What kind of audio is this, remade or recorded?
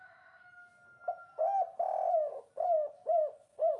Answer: recorded